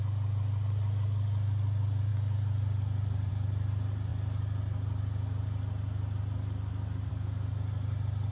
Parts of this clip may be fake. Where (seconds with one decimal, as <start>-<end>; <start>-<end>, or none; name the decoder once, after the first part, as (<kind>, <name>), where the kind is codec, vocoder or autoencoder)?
none